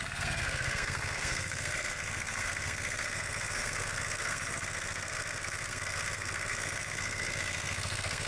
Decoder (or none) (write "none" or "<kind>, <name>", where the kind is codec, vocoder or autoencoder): codec, SNAC